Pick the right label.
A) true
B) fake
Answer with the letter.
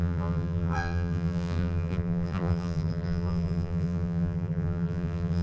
B